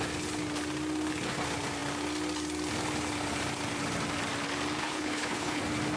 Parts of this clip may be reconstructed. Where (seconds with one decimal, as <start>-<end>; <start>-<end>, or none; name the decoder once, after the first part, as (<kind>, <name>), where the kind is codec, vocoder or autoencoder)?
4.8-5.6 (codec, HILCodec)